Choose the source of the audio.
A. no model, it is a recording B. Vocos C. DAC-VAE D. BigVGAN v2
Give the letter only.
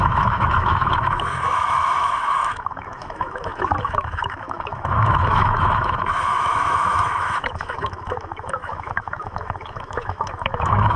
C